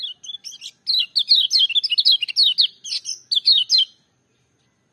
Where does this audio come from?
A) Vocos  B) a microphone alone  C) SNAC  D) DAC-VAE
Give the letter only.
B